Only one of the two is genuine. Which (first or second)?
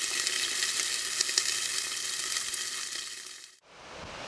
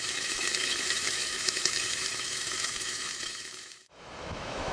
first